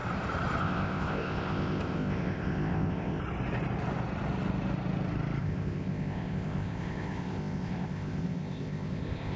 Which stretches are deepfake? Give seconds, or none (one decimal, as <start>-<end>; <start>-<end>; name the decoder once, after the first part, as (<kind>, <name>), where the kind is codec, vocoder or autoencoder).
0.6-3.2 (codec, ZipCodec); 5.4-9.4